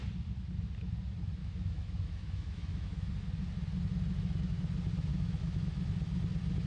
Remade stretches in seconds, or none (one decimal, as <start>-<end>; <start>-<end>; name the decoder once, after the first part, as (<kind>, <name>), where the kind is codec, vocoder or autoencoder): 1.4-3.1 (autoencoder, DAC-VAE); 5.1-5.7